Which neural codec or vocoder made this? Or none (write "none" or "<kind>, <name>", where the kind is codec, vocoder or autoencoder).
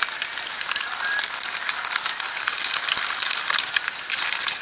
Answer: none